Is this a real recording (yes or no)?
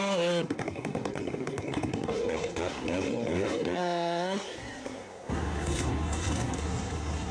no